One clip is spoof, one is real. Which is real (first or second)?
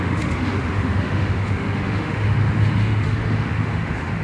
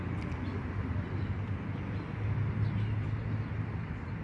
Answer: second